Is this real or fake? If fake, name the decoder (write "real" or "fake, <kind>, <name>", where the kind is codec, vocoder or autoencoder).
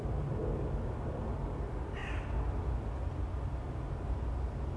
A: real